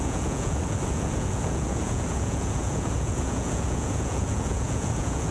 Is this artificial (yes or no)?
yes